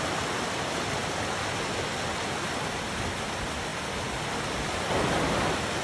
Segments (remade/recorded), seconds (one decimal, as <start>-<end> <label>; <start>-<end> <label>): 0.0-5.8 recorded